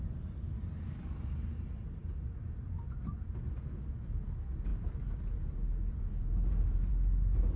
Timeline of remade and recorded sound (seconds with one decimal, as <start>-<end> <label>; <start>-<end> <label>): 0.0-4.7 recorded; 4.7-6.9 remade; 6.9-7.6 recorded